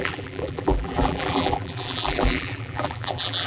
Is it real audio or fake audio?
fake